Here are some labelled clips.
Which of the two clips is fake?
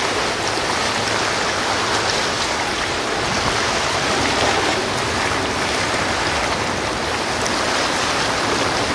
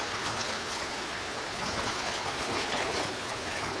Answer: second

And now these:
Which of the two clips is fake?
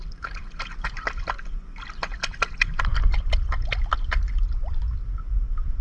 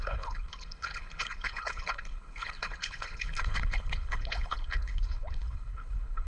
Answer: second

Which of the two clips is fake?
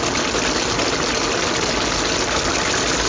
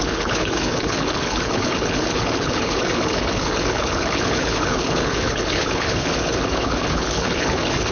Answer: second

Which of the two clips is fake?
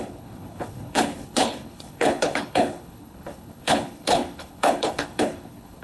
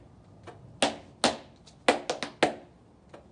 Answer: first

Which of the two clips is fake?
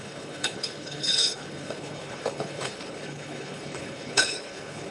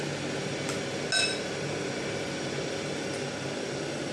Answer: first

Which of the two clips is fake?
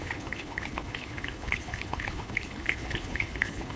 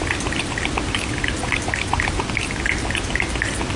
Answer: first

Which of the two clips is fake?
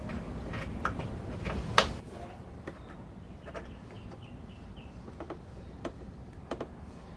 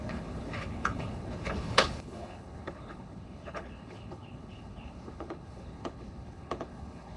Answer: second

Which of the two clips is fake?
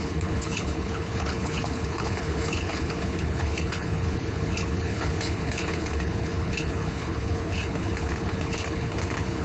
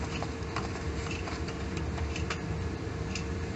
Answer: first